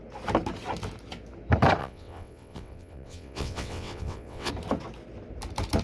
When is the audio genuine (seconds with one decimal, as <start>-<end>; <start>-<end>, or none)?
0.0-1.8; 4.5-5.8